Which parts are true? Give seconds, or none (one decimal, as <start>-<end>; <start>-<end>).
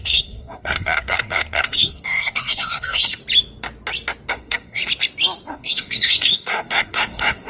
3.2-4.3; 4.8-5.5